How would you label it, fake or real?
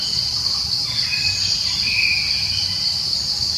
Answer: fake